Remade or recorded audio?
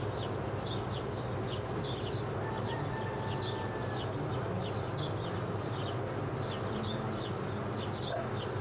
recorded